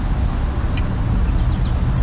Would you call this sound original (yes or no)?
yes